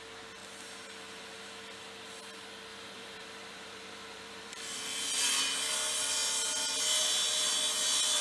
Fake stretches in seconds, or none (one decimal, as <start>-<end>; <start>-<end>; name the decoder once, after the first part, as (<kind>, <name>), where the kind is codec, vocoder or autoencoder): 2.7-5.4 (vocoder, BigVGAN v2)

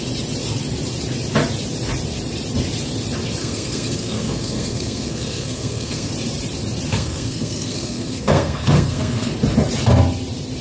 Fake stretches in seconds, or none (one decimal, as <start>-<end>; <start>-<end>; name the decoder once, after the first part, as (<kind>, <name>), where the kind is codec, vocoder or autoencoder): 3.4-6.1 (codec, SNAC); 6.9-9.3

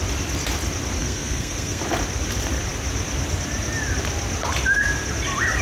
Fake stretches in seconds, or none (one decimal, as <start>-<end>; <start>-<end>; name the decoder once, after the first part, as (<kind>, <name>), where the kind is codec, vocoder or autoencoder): 1.0-1.8 (codec, SNAC)

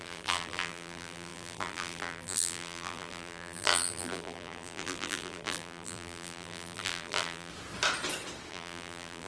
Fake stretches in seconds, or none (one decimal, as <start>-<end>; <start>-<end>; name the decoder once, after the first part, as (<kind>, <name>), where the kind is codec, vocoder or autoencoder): 0.0-7.5 (vocoder, BigVGAN v2); 8.5-9.3